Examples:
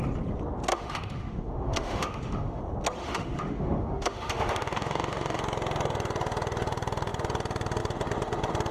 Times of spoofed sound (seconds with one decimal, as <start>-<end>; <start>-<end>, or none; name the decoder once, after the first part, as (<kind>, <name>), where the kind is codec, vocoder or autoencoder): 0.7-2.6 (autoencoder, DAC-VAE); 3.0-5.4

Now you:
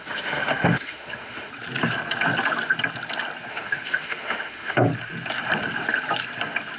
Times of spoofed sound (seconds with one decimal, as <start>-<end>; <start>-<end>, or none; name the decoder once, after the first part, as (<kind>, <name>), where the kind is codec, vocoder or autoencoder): 0.0-1.5 (autoencoder, DAC-VAE); 3.5-4.9

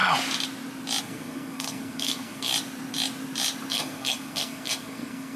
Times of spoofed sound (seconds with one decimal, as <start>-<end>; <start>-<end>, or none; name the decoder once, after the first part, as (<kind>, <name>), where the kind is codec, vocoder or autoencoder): 1.0-2.5 (codec, SNAC); 3.7-5.4

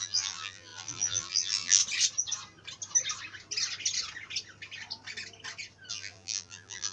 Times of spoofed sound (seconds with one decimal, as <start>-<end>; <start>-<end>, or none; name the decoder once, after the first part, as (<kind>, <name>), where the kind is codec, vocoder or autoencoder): 0.0-1.8 (vocoder, BigVGAN v2); 5.9-6.9

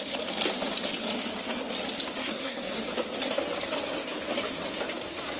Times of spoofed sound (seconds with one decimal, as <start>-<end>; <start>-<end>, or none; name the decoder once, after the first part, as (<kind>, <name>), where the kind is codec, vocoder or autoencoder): 2.2-2.8 (codec, SNAC)